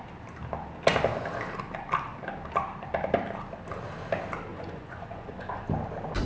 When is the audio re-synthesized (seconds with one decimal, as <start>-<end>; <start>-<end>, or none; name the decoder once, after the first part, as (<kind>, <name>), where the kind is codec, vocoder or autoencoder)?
4.5-5.7 (vocoder, Vocos)